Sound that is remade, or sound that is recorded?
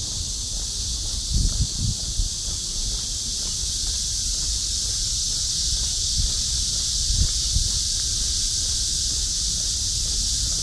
recorded